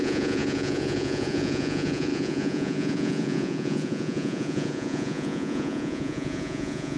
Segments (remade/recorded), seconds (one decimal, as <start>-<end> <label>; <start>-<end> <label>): 0.0-7.0 remade